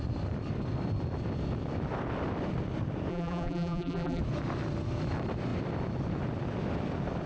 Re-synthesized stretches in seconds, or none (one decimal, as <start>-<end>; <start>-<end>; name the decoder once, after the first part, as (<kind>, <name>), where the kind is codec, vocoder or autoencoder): 3.1-4.2 (vocoder, BigVGAN v2)